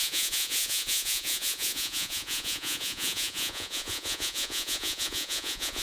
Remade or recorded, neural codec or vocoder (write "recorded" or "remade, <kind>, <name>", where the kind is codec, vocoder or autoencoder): remade, vocoder, Vocos